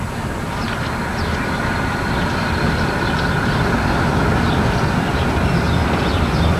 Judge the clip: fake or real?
real